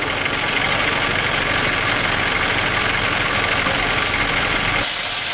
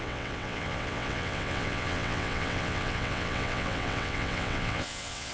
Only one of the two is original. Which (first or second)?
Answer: first